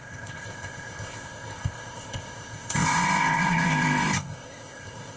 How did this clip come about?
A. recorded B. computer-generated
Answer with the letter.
B